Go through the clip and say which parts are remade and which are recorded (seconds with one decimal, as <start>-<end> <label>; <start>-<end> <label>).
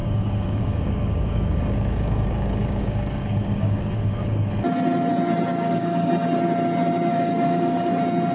0.0-4.5 remade; 4.5-5.5 recorded; 5.5-6.1 remade; 6.1-7.1 recorded; 7.1-7.9 remade; 7.9-8.3 recorded